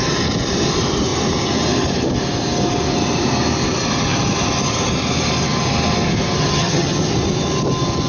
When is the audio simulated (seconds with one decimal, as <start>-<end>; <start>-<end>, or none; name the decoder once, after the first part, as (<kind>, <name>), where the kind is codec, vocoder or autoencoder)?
6.4-7.0 (vocoder, HiFi-GAN)